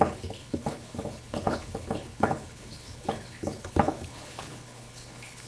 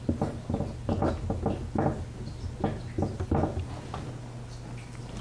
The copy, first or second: first